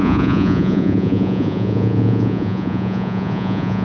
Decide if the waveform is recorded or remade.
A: remade